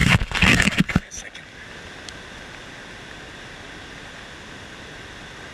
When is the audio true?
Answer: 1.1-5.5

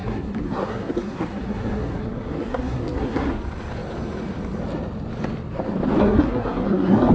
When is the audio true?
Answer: 3.4-6.0

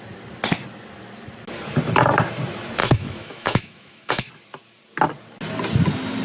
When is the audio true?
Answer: 0.0-2.8; 4.3-6.2

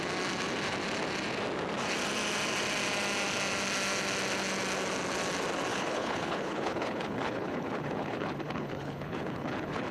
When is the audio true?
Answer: 0.0-5.7

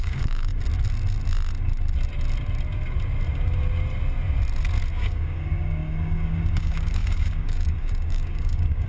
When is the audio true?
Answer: 0.5-4.9

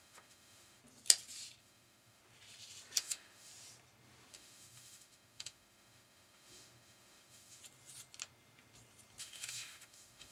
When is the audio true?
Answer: 0.8-1.6; 2.2-3.0; 3.5-4.3; 7.6-9.2

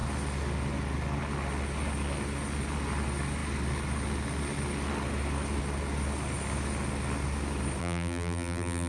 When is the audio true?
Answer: 0.0-7.8